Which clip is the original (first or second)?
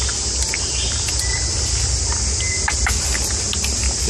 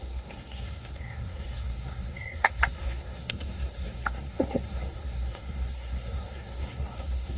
first